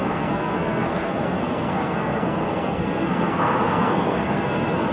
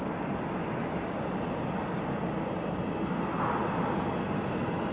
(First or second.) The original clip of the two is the second